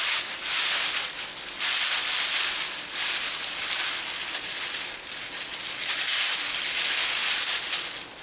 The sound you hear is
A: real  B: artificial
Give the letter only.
A